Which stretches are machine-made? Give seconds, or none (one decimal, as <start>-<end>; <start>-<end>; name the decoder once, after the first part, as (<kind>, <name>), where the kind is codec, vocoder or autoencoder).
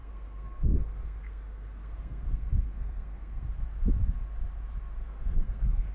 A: 0.0-3.5 (codec, SNAC); 5.0-5.9